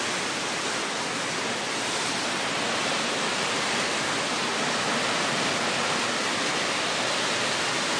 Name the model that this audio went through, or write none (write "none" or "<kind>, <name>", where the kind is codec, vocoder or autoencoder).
none